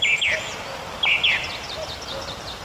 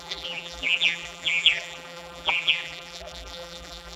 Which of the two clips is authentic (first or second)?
first